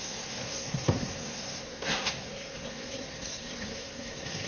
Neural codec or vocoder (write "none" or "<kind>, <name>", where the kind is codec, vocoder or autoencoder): codec, SNAC